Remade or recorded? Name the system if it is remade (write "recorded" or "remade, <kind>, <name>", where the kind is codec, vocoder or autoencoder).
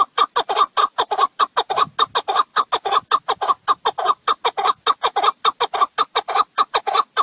recorded